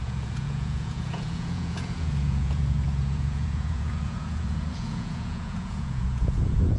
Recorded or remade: remade